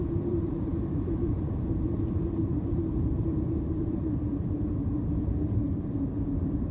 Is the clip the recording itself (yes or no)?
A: no